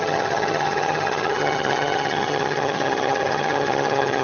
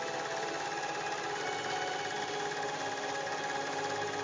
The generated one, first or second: first